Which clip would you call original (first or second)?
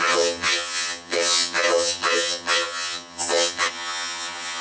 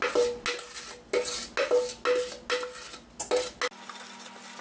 second